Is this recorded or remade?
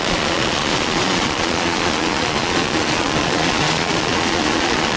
remade